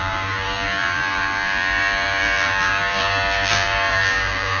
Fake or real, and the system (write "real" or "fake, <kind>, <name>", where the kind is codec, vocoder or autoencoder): fake, vocoder, BigVGAN v2